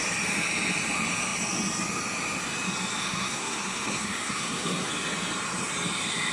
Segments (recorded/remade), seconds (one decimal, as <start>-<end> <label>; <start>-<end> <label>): 0.0-3.0 recorded; 3.0-4.9 remade; 4.9-6.3 recorded